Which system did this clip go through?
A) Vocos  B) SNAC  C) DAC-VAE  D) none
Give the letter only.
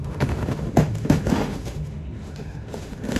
C